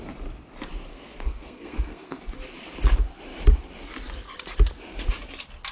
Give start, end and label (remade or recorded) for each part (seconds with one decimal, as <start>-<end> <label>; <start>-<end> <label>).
0.0-0.9 recorded; 0.9-2.2 remade; 2.2-5.7 recorded